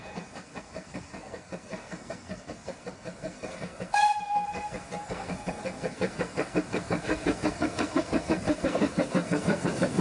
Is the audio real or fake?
fake